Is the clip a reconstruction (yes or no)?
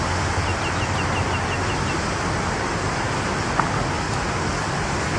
no